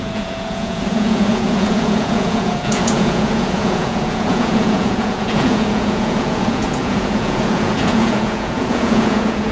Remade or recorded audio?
remade